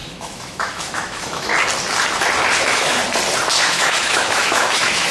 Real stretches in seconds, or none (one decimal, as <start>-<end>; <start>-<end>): 1.5-2.6; 3.0-3.6